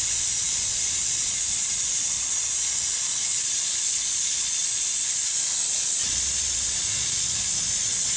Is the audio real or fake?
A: fake